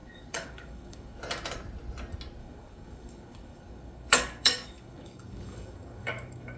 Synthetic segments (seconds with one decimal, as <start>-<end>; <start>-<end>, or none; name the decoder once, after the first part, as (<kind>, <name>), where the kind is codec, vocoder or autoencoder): 0.0-1.2 (codec, DAC); 2.4-6.6